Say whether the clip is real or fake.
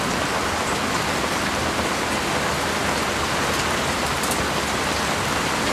real